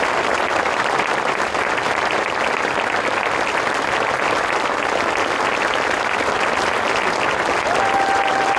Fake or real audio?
real